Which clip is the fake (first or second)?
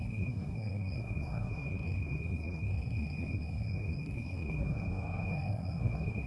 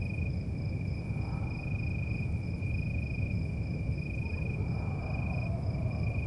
first